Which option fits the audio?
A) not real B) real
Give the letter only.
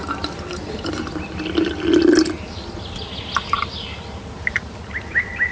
B